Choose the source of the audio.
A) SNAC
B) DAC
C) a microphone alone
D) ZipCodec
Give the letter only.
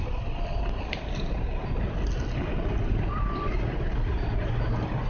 C